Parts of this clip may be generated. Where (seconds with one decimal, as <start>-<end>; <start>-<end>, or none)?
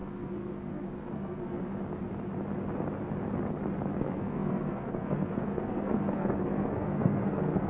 0.0-1.7; 4.0-7.7